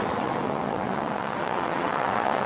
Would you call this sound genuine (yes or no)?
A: no